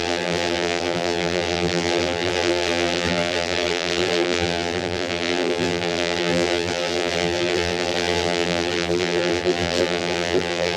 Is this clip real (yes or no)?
no